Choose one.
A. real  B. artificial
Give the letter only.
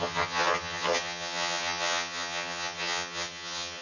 B